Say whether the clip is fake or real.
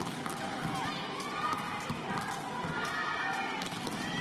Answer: real